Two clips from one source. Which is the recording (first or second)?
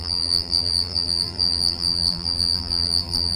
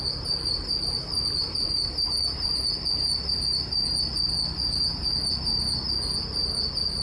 second